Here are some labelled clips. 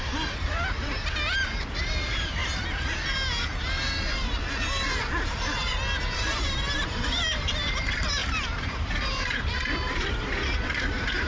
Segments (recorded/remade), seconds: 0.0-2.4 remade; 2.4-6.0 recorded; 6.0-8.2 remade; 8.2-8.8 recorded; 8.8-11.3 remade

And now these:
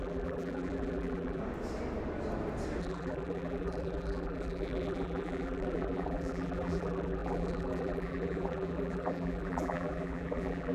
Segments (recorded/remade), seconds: 0.0-1.4 remade; 1.4-2.8 recorded; 2.8-10.7 remade

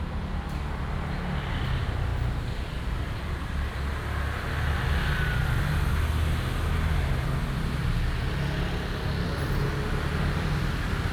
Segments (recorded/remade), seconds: 0.0-2.1 recorded; 2.1-3.4 remade; 3.4-11.1 recorded

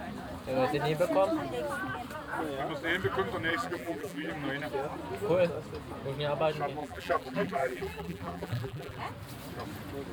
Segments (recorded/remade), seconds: 0.0-3.5 recorded; 3.5-4.3 remade; 4.3-6.8 recorded; 6.8-9.0 remade; 9.0-10.1 recorded

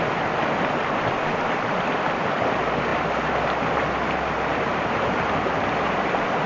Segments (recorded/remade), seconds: 0.0-2.9 recorded; 2.9-3.9 remade; 3.9-6.5 recorded